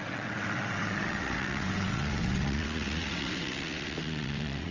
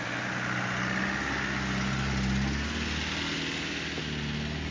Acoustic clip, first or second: second